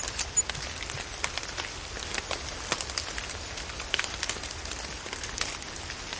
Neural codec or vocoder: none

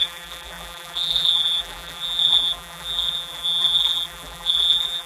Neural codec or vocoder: vocoder, BigVGAN v2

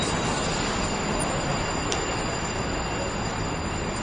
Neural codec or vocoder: none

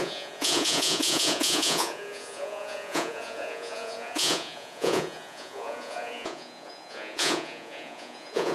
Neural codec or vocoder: vocoder, Vocos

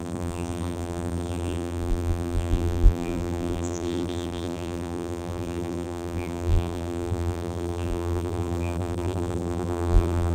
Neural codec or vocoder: vocoder, BigVGAN v2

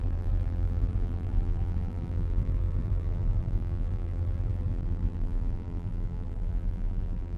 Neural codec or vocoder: vocoder, BigVGAN v2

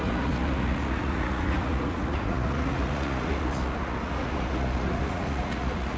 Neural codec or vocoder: vocoder, Vocos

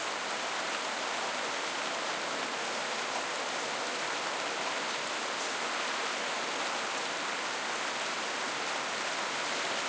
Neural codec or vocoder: none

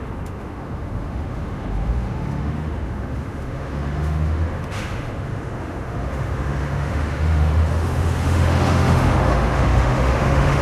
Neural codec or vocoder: autoencoder, DAC-VAE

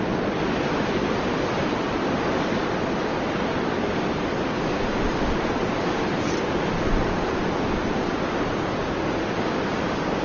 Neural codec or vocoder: none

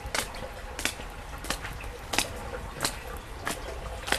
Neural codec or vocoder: none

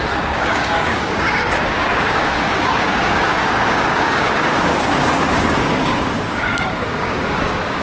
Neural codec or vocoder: codec, DAC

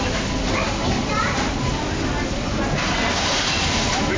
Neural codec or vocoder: none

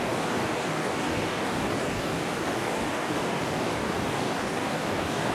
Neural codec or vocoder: codec, DAC